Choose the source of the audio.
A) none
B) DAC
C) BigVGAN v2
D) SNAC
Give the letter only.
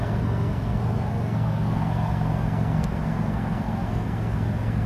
D